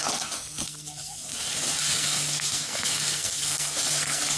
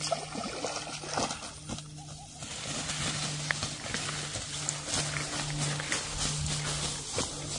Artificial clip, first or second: first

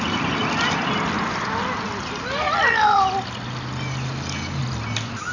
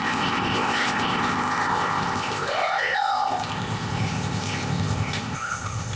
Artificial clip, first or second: second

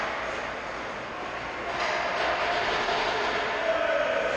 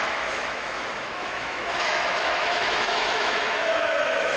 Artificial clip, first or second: second